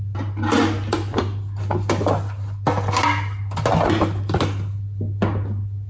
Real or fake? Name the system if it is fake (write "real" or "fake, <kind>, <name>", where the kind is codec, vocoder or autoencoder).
real